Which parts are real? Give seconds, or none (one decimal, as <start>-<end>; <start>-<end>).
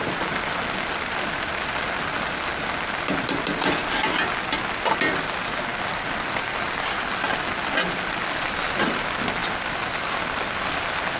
0.0-11.2